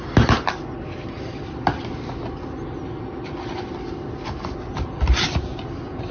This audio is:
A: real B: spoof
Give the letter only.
A